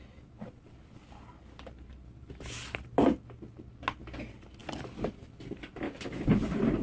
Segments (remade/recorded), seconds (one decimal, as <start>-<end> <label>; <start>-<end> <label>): 0.0-6.8 recorded